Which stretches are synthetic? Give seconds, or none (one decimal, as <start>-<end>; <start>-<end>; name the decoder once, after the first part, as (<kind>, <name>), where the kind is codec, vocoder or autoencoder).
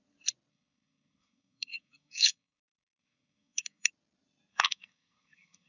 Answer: 0.5-3.9 (codec, SNAC); 4.5-5.7